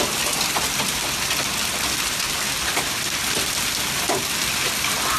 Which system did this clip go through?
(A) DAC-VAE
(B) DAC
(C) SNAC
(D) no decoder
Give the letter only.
D